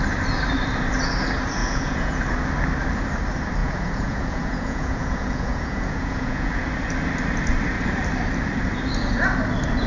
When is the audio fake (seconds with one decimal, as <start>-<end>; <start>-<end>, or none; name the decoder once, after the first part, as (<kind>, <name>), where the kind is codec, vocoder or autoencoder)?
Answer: 1.6-2.2 (vocoder, Vocos); 3.6-6.5

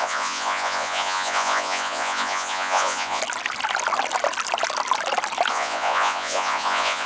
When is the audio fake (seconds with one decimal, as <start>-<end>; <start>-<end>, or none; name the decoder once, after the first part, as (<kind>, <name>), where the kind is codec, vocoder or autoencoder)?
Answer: 0.0-3.2 (vocoder, Vocos); 5.5-7.1

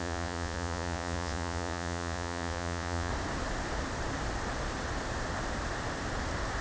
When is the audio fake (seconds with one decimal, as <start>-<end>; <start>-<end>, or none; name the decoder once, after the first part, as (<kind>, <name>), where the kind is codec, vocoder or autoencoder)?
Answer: 0.0-3.1 (vocoder, Vocos)

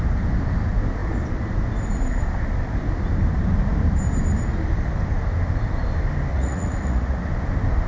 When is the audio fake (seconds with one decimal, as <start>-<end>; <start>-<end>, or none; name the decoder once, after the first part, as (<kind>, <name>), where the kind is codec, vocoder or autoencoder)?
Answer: 6.3-7.3 (vocoder, Vocos)